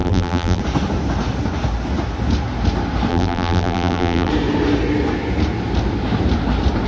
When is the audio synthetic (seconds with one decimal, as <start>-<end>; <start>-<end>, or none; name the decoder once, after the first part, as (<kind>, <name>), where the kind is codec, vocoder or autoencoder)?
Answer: 0.0-0.6 (vocoder, BigVGAN v2); 3.1-4.3